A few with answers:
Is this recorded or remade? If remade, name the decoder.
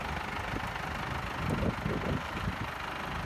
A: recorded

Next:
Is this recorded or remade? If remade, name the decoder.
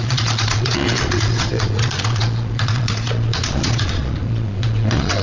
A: remade, vocoder, Vocos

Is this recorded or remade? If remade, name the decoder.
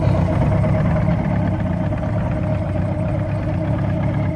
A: recorded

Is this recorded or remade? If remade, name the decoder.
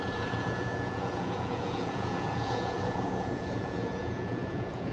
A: remade, vocoder, Vocos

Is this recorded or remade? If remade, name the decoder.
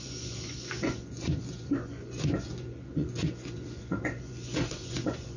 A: remade, vocoder, Vocos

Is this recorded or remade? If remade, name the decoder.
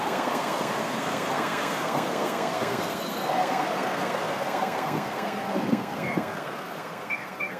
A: remade, codec, SNAC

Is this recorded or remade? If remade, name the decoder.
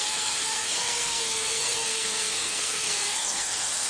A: remade, codec, SNAC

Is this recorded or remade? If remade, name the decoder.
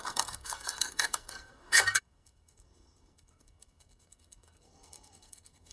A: remade, codec, SNAC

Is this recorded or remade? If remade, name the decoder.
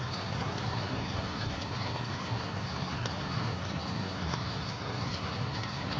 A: remade, codec, SNAC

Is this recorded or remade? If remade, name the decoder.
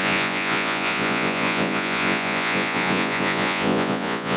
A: remade, vocoder, Vocos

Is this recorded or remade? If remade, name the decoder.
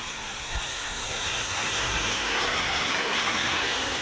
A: remade, codec, SNAC